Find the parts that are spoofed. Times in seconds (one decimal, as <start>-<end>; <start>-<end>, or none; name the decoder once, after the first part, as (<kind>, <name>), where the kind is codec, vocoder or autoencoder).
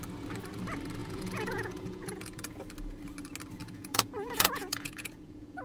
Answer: 1.0-2.5 (vocoder, Vocos); 3.6-5.6